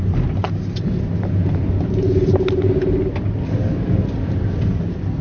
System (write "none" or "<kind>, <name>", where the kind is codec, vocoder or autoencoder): none